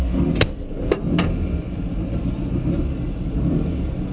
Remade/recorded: recorded